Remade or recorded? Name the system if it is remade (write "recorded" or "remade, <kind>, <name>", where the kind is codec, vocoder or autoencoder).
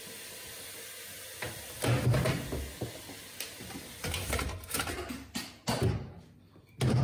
recorded